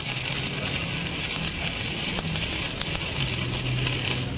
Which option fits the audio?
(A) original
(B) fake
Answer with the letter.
A